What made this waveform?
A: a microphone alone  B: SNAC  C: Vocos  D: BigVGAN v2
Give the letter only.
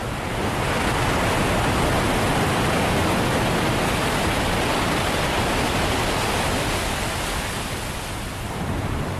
A